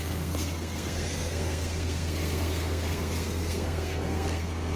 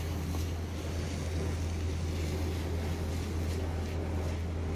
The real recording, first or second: second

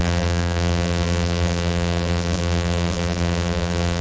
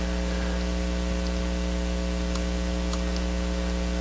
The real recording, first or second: second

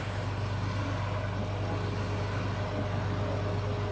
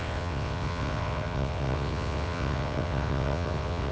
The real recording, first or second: first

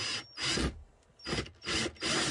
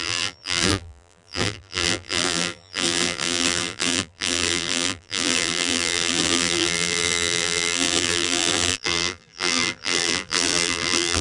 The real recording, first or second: first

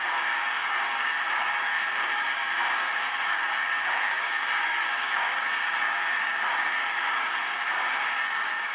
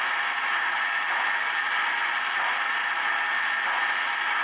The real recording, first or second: second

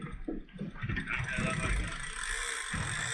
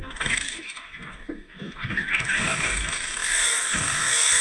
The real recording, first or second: first